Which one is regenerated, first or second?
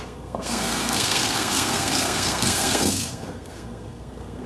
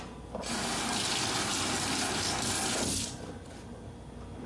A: first